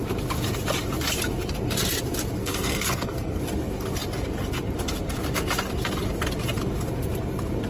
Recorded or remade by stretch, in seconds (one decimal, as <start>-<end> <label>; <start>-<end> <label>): 0.0-2.4 recorded; 2.4-3.4 remade; 3.4-7.7 recorded